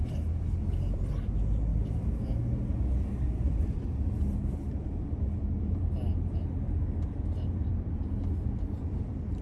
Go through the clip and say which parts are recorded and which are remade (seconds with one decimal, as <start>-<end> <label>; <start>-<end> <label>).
0.0-1.7 remade; 1.7-5.6 recorded; 5.6-6.1 remade; 6.1-8.3 recorded; 8.3-9.4 remade